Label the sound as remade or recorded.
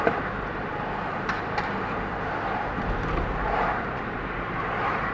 remade